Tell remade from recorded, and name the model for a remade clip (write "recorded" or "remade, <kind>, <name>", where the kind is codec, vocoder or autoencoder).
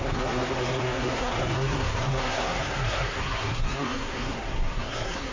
remade, codec, SNAC